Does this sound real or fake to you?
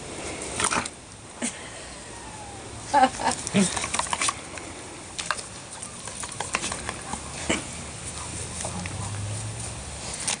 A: real